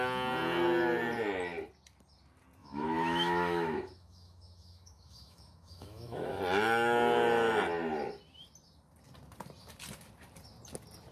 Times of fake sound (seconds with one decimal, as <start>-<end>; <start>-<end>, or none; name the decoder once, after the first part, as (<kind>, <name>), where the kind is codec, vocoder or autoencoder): 2.6-6.4 (autoencoder, DAC-VAE)